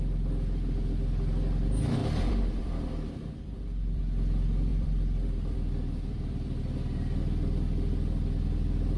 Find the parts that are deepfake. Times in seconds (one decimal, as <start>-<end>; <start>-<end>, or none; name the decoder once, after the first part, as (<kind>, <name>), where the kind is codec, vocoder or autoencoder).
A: 2.0-4.0 (vocoder, BigVGAN v2); 4.7-6.6

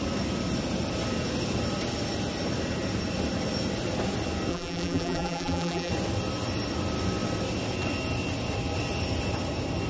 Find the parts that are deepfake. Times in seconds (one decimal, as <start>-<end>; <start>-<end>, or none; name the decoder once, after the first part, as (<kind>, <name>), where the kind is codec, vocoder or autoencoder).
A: 4.5-5.9 (vocoder, BigVGAN v2)

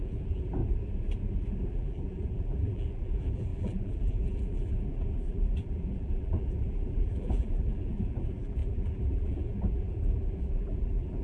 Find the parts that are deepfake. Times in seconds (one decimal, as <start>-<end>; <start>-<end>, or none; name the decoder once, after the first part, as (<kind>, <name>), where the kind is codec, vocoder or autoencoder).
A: 0.0-0.6 (vocoder, BigVGAN v2); 1.6-11.2

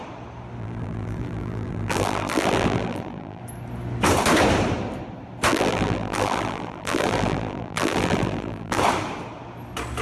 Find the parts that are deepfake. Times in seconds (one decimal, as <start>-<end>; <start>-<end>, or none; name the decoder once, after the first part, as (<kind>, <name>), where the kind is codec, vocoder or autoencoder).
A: 0.6-3.4 (vocoder, BigVGAN v2); 5.5-8.8